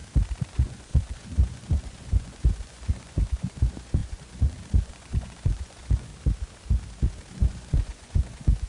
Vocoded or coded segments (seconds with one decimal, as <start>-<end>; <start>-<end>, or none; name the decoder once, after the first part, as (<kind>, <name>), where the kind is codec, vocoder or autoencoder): 0.5-6.1 (vocoder, Vocos); 7.3-8.7